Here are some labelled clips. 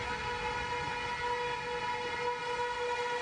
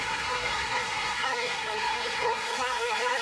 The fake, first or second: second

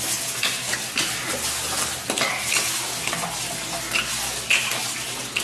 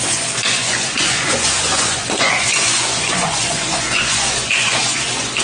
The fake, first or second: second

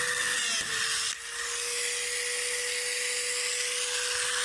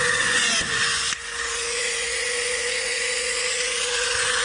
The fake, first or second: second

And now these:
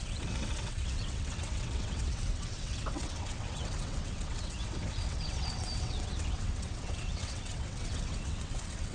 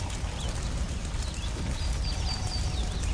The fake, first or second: first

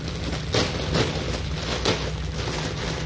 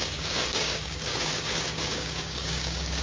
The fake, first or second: second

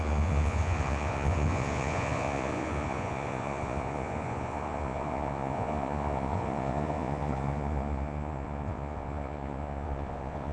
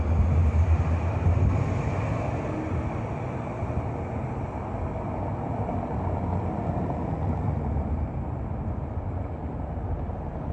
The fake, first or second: first